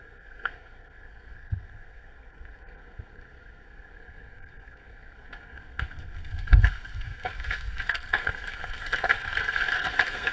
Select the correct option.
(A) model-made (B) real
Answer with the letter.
A